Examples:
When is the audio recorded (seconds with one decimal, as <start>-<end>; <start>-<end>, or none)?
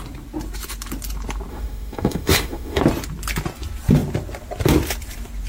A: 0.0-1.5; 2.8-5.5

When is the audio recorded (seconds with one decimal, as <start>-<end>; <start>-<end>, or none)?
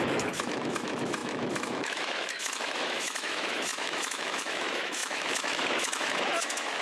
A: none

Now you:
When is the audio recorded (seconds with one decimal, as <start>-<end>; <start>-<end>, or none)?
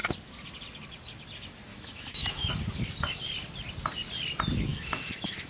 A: 0.0-1.7; 2.5-4.7